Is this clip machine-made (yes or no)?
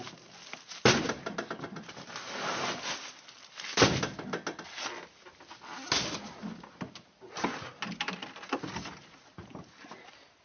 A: no